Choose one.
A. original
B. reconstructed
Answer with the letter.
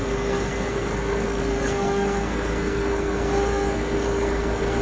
B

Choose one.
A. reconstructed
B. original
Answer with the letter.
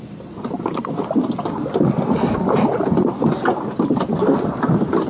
B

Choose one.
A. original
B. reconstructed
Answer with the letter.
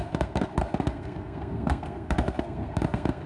B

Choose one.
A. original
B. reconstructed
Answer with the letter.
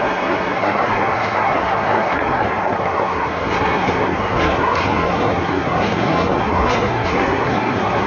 B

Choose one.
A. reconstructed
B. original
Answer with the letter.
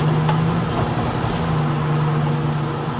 B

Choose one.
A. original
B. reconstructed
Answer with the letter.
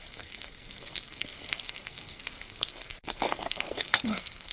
B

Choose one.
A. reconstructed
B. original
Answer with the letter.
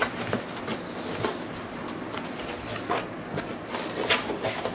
B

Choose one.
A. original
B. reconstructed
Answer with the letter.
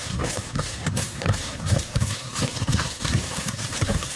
B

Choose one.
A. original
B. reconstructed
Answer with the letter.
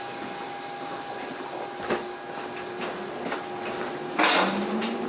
A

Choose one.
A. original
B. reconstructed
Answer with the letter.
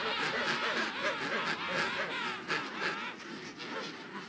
A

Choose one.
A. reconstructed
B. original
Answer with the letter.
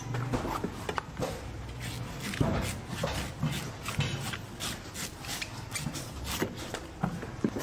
B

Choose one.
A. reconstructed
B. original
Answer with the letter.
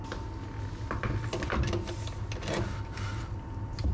B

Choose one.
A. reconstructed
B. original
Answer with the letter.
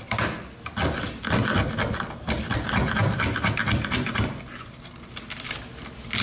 B